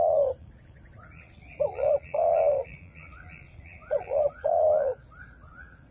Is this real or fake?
fake